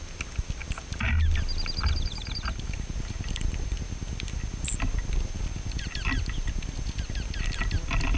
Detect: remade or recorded recorded